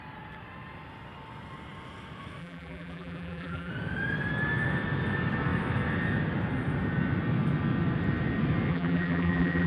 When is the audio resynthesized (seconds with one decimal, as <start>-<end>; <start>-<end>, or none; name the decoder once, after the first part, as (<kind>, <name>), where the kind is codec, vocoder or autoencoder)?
2.4-3.7 (vocoder, BigVGAN v2); 8.7-9.7